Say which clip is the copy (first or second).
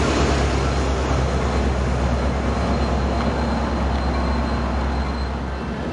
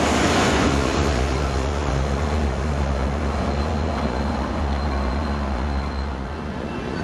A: second